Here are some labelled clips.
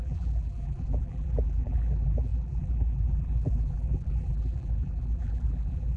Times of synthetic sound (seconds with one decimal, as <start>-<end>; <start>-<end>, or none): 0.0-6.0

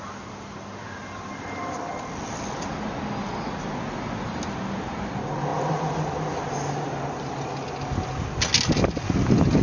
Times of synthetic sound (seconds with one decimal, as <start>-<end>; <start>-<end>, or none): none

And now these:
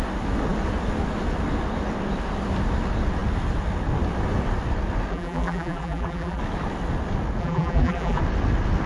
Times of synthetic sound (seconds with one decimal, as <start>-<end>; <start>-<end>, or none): 5.1-6.4; 7.4-8.2

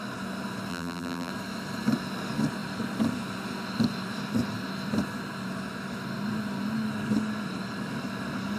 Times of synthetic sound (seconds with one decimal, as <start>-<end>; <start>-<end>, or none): 0.7-1.3

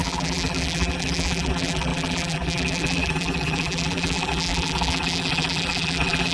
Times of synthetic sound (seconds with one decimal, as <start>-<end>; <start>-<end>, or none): 0.0-6.3

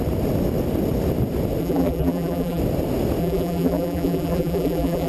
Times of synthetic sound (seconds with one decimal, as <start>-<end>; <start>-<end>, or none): 1.6-2.6; 3.2-5.1

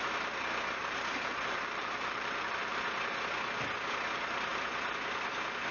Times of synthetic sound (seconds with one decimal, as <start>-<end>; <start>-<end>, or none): 0.8-2.8